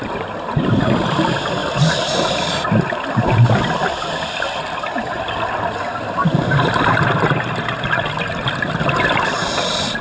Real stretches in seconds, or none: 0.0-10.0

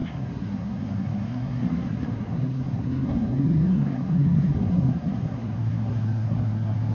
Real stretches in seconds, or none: none

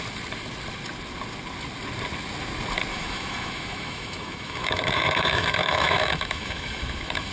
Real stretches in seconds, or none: 0.0-2.9

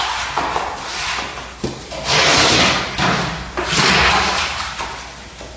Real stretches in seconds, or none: 0.0-5.6

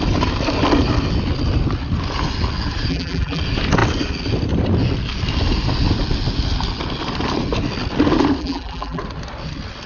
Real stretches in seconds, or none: 0.0-2.9; 3.4-8.4; 9.0-9.9

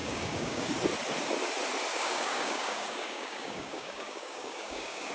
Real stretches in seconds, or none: 0.7-1.9

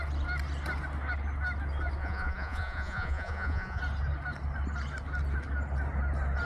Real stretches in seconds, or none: 0.0-2.0; 3.8-6.4